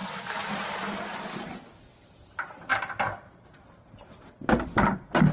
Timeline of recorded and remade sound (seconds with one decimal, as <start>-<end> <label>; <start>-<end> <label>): 0.0-5.3 recorded